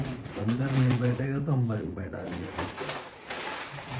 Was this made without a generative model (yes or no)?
no